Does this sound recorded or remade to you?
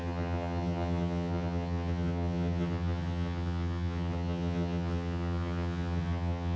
remade